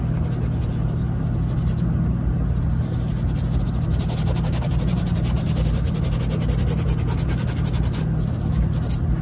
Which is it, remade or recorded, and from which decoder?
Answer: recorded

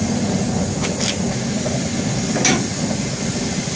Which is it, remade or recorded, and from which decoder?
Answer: recorded